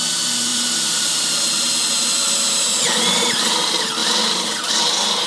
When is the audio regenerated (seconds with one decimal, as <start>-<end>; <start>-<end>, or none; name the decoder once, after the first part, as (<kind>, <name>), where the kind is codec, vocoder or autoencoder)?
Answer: 0.5-1.3 (vocoder, BigVGAN v2); 4.0-4.7